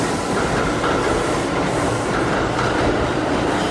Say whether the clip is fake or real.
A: real